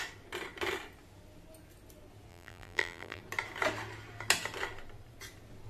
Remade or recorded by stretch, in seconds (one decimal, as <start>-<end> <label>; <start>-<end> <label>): 0.0-2.3 recorded; 2.3-3.2 remade; 3.2-5.7 recorded